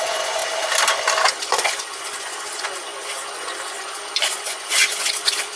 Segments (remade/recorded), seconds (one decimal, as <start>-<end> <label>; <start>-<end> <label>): 0.0-0.4 remade; 0.4-1.3 recorded; 1.3-5.6 remade